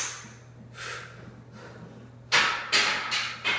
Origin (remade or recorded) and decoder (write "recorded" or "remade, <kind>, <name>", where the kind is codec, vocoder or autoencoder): recorded